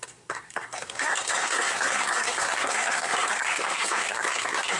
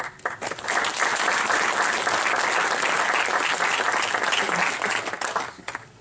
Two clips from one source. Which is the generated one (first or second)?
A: first